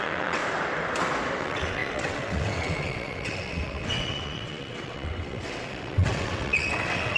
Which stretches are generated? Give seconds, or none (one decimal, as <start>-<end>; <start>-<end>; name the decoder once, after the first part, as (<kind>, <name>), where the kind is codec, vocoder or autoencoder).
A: 0.0-0.4 (vocoder, WaveNeXt); 1.4-7.2